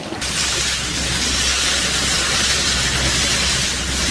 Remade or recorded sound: recorded